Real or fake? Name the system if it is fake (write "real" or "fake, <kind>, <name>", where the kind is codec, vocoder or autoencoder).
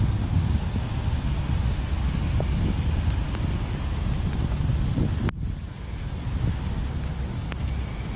real